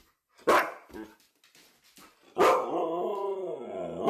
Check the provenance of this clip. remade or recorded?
recorded